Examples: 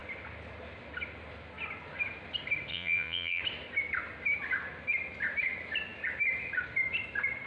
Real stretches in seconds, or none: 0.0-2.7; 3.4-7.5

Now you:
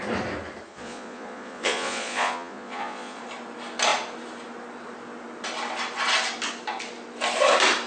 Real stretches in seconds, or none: 0.0-0.7; 3.2-7.9

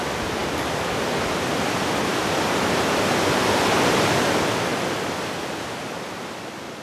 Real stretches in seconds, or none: 0.0-6.8

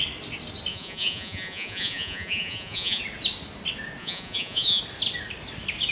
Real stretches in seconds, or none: 0.0-0.7; 3.0-4.0; 4.8-5.9